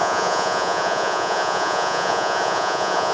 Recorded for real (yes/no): no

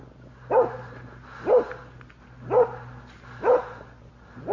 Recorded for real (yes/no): yes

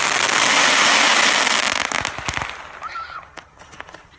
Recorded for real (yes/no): yes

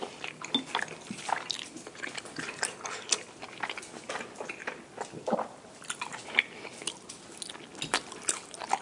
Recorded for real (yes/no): yes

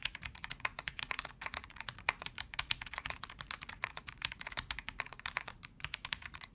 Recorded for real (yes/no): no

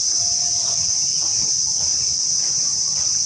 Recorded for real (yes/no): yes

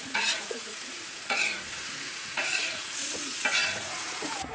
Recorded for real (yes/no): no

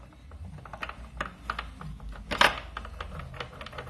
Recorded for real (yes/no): yes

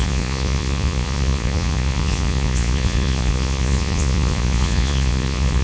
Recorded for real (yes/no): no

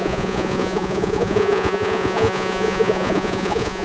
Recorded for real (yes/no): no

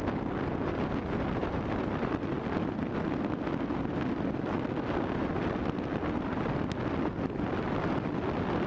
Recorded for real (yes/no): yes